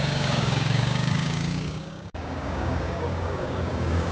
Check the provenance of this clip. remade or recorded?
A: remade